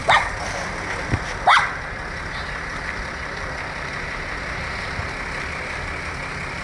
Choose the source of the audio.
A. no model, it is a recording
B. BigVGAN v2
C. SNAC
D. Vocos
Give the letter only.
A